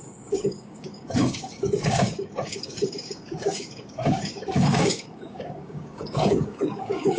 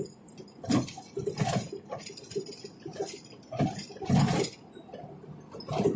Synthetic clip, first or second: first